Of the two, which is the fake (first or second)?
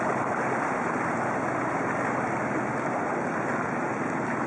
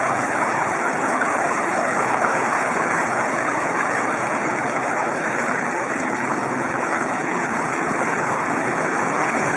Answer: second